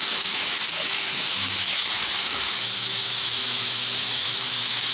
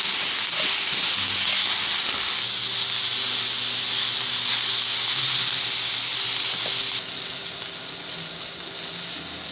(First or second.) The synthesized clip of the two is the first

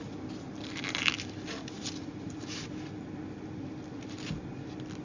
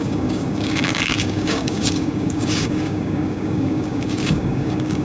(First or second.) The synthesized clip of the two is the second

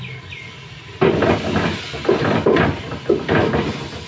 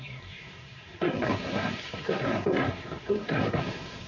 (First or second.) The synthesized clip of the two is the second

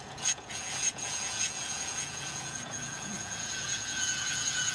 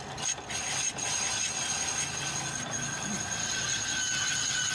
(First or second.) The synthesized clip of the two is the first